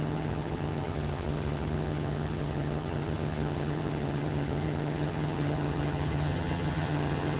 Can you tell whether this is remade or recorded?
remade